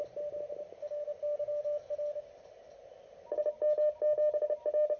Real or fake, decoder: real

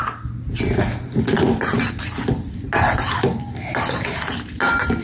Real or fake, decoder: real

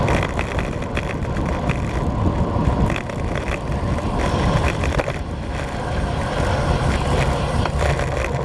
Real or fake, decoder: fake, vocoder, BigVGAN v2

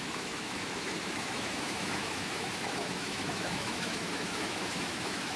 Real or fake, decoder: fake, autoencoder, DAC-VAE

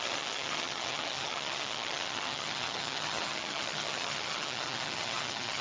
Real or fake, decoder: fake, vocoder, HiFi-GAN